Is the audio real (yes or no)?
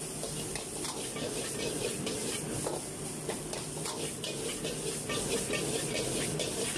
yes